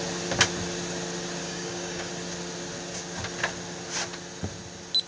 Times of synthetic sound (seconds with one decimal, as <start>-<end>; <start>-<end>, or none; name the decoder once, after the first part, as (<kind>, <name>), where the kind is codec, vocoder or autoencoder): 1.4-2.1 (codec, DAC)